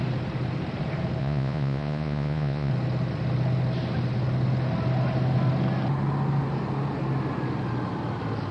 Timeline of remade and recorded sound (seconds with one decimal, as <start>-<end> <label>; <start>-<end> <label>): 0.0-1.2 recorded; 1.2-2.7 remade; 2.7-8.5 recorded